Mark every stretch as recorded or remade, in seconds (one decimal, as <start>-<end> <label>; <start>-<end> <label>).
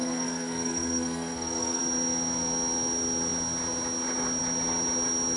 0.0-1.8 remade; 1.8-5.4 recorded